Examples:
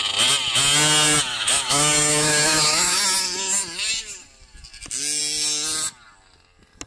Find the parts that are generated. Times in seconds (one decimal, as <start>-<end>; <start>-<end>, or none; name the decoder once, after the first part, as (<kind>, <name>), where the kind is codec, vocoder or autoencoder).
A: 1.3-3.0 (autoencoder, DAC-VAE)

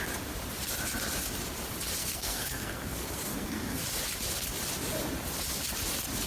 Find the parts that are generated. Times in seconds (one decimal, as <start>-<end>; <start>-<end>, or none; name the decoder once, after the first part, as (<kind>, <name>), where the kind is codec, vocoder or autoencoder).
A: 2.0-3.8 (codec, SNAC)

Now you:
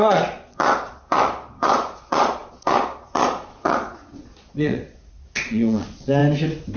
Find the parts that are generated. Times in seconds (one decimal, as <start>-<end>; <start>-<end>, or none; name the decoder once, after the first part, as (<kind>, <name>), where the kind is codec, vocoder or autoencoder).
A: 0.0-6.2 (vocoder, Vocos)

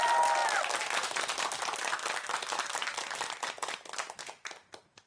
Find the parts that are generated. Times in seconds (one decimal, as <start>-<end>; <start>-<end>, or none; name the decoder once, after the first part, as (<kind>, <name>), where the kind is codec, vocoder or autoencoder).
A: none

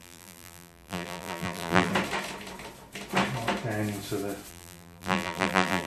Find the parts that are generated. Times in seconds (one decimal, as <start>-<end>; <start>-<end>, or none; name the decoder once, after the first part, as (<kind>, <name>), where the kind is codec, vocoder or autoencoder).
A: 0.0-1.9 (vocoder, BigVGAN v2); 4.5-5.9